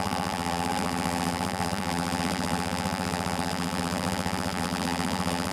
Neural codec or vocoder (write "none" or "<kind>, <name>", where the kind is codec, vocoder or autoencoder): vocoder, BigVGAN v2